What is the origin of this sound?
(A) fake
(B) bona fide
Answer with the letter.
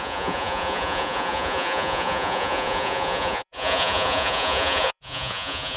A